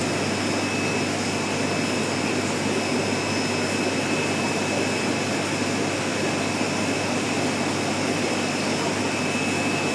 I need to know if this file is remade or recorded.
recorded